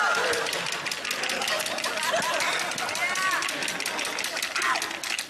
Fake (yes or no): no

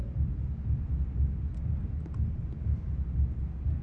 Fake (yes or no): no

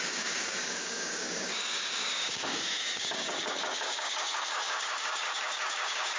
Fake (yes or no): yes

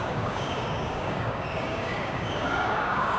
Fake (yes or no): yes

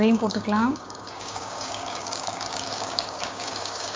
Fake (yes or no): yes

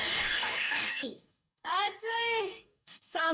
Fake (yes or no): yes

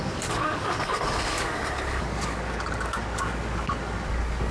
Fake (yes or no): yes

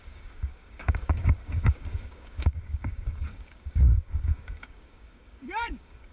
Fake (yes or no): yes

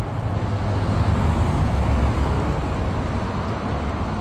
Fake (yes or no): no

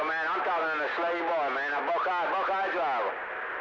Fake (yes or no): no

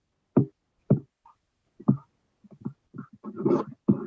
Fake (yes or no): no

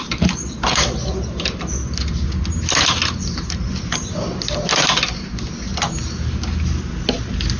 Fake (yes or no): no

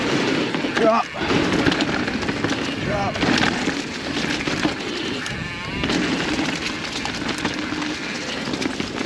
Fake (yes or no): no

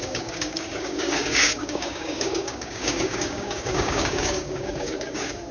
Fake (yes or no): yes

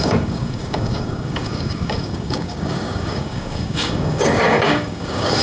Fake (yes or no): yes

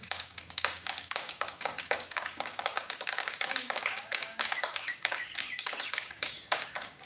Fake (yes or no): yes